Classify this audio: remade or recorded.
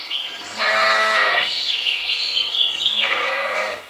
remade